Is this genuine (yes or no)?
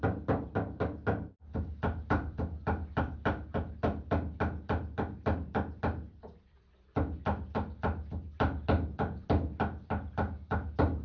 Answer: yes